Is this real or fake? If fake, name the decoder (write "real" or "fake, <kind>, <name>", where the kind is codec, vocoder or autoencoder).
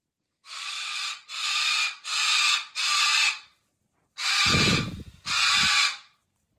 fake, vocoder, BigVGAN v2